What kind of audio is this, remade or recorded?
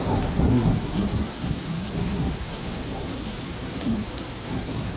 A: remade